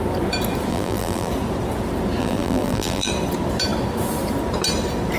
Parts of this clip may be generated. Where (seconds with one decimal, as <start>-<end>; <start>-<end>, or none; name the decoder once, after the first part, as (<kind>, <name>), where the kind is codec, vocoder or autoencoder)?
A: 0.7-1.3 (vocoder, BigVGAN v2); 2.2-3.1